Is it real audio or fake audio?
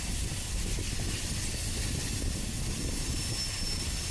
real